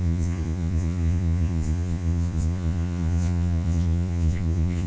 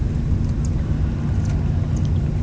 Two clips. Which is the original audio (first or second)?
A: second